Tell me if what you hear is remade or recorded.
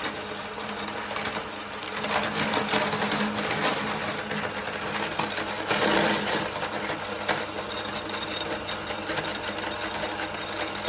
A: recorded